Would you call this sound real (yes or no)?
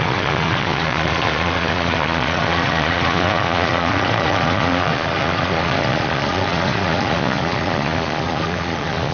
no